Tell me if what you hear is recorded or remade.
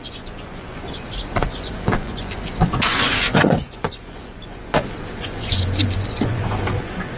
remade